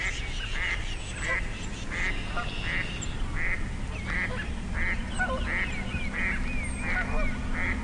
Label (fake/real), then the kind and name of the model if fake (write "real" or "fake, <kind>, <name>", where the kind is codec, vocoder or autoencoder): real